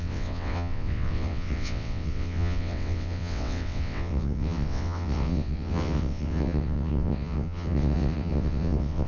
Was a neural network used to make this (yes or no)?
yes